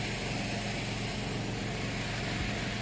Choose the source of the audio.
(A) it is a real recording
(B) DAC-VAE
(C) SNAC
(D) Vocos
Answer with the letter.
A